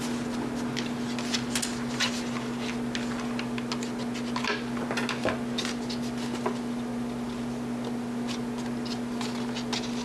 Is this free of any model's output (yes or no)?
yes